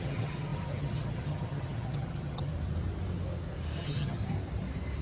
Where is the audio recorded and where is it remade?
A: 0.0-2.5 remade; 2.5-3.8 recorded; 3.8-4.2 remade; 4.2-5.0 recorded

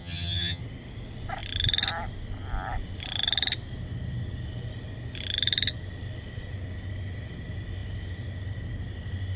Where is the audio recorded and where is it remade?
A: 0.0-0.6 remade; 0.6-9.4 recorded

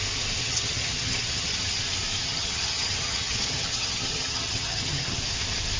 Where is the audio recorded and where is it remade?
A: 0.0-0.4 recorded; 0.4-1.8 remade; 1.8-2.2 recorded; 2.2-5.2 remade; 5.2-5.8 recorded

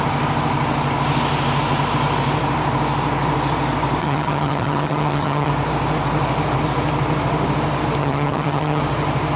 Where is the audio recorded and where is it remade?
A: 0.0-4.0 recorded; 4.0-5.5 remade; 5.5-8.0 recorded; 8.0-8.8 remade; 8.8-9.4 recorded

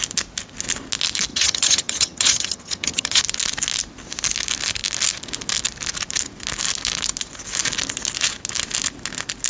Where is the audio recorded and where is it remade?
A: 0.0-1.3 recorded; 1.3-3.2 remade; 3.2-9.5 recorded